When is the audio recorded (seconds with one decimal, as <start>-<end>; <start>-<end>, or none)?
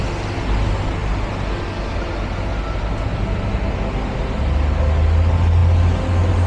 0.0-6.5